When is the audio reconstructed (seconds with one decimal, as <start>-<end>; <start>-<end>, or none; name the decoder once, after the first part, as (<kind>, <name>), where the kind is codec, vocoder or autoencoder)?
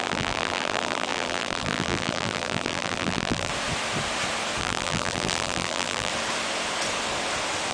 0.0-3.5 (vocoder, BigVGAN v2); 4.6-6.1